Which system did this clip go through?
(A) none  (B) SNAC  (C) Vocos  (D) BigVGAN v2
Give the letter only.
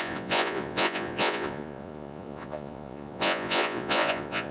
C